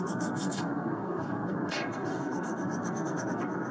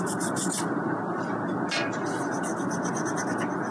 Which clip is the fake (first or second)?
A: first